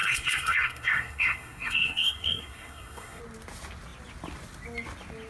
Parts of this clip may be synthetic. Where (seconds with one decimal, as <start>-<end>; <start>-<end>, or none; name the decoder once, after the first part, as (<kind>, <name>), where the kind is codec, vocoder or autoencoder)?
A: 0.0-3.2 (codec, SNAC)